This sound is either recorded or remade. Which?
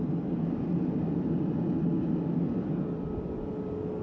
recorded